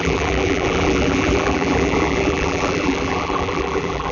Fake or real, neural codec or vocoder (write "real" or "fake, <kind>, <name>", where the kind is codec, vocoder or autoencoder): fake, vocoder, BigVGAN v2